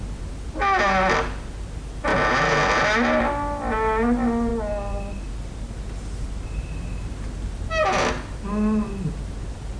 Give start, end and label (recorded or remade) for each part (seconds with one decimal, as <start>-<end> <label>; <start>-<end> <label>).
0.0-9.8 recorded